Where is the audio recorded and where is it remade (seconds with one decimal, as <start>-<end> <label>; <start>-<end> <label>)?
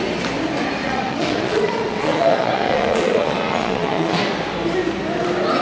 0.0-0.8 recorded; 0.8-4.2 remade; 4.2-5.6 recorded